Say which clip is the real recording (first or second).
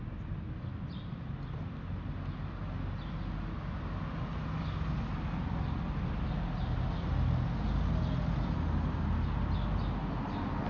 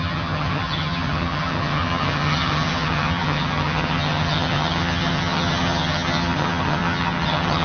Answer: first